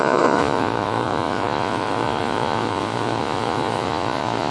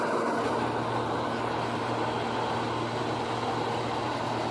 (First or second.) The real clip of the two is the second